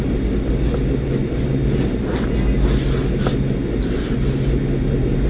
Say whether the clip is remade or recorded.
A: recorded